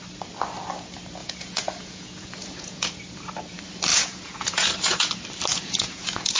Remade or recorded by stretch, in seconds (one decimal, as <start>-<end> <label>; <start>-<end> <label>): 0.0-1.2 recorded; 1.2-2.9 remade; 2.9-3.9 recorded; 3.9-5.1 remade; 5.1-5.5 recorded; 5.5-6.4 remade